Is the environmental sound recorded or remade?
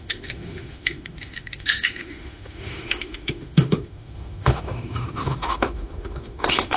remade